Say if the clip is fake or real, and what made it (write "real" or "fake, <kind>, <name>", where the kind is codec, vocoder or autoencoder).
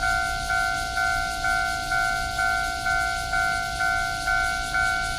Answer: real